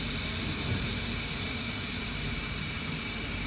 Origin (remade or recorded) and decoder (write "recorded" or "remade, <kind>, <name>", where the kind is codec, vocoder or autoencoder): remade, vocoder, BigVGAN v2